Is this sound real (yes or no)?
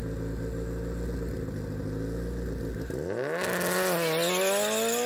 yes